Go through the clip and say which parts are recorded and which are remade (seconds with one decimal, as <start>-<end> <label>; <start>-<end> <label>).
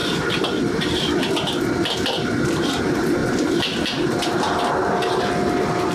0.0-5.9 recorded